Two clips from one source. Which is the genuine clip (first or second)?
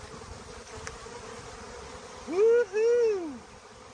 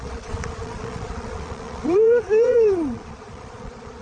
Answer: first